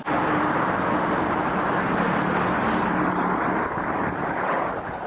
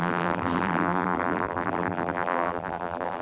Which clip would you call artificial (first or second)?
second